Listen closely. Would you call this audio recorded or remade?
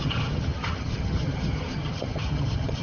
remade